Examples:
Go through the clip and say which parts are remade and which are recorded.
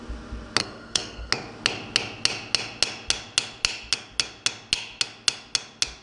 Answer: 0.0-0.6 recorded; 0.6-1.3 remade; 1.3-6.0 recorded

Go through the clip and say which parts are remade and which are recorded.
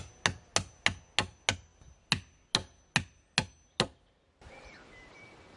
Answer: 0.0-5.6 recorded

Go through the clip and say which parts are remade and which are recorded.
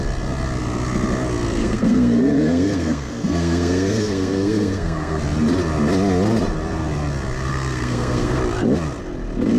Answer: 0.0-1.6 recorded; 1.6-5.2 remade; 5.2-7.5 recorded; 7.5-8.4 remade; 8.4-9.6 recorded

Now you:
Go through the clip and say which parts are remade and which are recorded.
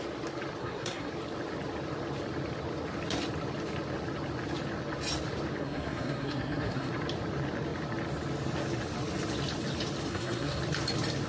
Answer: 0.0-0.6 recorded; 0.6-1.1 remade; 1.1-5.6 recorded; 5.6-6.9 remade; 6.9-10.1 recorded; 10.1-10.6 remade; 10.6-11.3 recorded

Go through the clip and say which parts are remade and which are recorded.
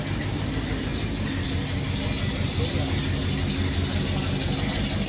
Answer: 0.0-5.1 recorded